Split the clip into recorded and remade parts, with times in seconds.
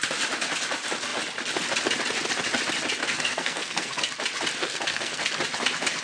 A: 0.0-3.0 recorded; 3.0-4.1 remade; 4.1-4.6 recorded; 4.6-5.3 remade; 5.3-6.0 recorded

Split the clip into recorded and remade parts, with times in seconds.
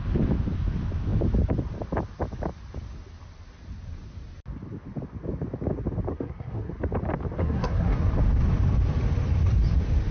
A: 0.0-6.1 recorded; 6.1-6.7 remade; 6.7-7.4 recorded; 7.4-8.1 remade; 8.1-10.1 recorded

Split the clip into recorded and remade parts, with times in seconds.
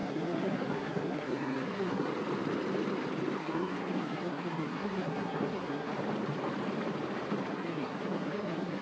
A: 0.0-2.1 remade; 2.1-3.4 recorded; 3.4-5.9 remade; 5.9-7.5 recorded; 7.5-8.8 remade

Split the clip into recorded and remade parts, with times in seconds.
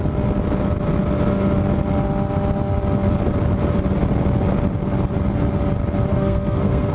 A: 0.0-6.1 recorded; 6.1-6.9 remade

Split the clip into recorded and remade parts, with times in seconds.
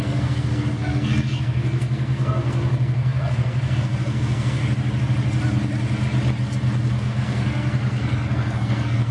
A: 0.0-4.6 remade; 4.6-6.9 recorded; 6.9-9.1 remade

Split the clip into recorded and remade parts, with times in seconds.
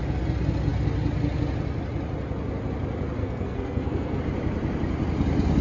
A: 0.0-3.2 recorded; 3.2-4.2 remade; 4.2-5.6 recorded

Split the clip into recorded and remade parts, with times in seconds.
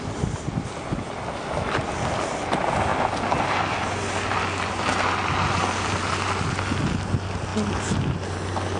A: 0.0-8.8 recorded